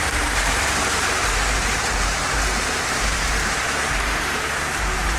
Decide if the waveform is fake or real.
fake